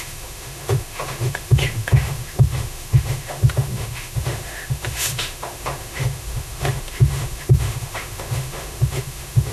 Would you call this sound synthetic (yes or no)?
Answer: yes